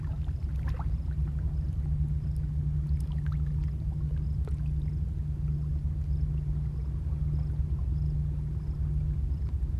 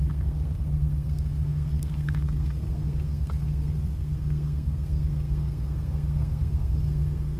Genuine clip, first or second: first